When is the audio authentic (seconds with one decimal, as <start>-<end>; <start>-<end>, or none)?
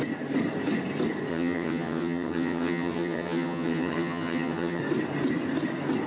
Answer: 0.0-1.3; 4.8-6.1